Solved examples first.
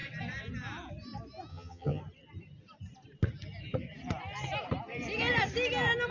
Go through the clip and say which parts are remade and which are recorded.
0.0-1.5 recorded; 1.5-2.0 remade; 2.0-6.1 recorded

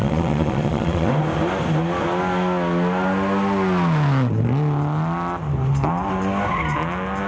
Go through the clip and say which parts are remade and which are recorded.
0.0-1.1 remade; 1.1-7.3 recorded

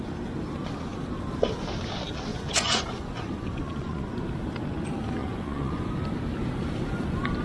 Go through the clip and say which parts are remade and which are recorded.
0.0-2.3 recorded; 2.3-4.2 remade; 4.2-5.2 recorded; 5.2-5.9 remade; 5.9-7.4 recorded

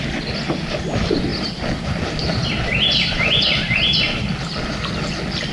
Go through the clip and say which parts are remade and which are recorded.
0.0-1.3 recorded; 1.3-2.4 remade; 2.4-5.5 recorded